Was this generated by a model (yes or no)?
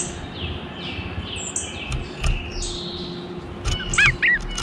no